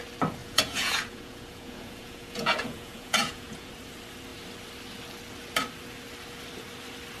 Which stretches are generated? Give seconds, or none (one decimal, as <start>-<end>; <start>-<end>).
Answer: 0.4-3.7